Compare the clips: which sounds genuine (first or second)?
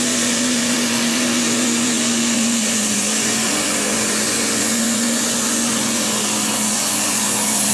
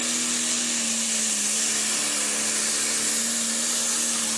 second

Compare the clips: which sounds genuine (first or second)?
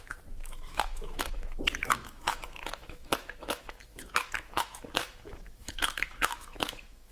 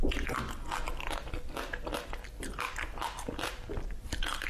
second